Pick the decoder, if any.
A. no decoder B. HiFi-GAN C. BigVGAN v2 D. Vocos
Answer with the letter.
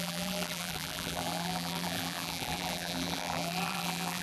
C